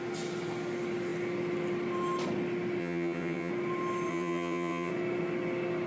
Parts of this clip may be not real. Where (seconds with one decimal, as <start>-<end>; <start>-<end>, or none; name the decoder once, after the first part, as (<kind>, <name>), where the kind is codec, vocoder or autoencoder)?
2.8-3.5 (vocoder, HiFi-GAN); 4.1-4.9